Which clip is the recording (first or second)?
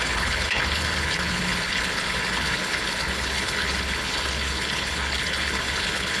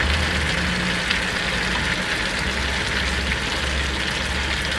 second